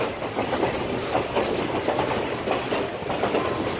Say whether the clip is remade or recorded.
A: recorded